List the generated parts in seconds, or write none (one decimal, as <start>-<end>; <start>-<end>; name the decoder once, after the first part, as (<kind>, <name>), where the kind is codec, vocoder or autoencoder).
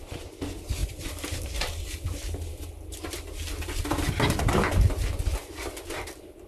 none